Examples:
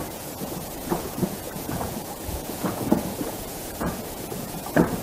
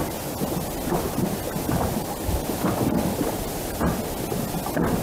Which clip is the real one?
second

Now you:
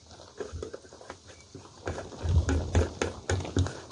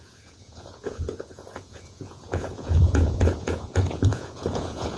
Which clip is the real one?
first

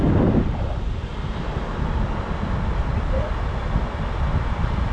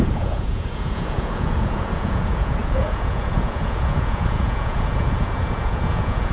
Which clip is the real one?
first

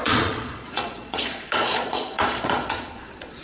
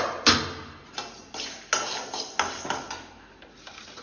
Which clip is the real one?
second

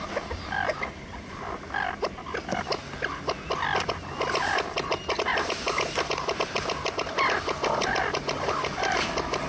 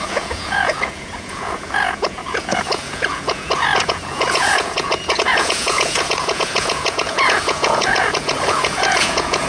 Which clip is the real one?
first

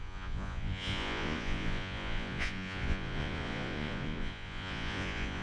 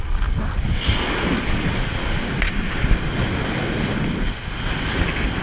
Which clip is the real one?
second